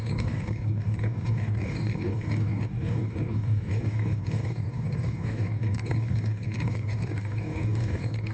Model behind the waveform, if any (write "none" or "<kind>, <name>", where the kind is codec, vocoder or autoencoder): codec, DAC